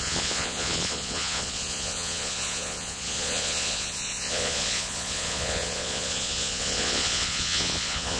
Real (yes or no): no